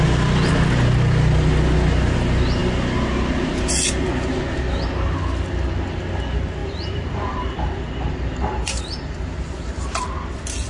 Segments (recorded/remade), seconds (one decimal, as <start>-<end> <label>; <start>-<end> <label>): 0.0-6.6 recorded; 6.6-10.0 remade; 10.0-10.7 recorded